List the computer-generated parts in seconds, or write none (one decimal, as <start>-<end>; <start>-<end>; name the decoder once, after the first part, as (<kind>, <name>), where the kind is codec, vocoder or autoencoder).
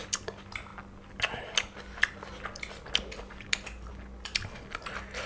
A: none